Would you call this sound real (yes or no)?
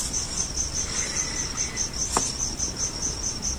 yes